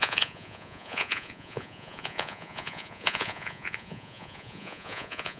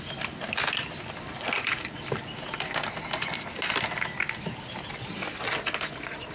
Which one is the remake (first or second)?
first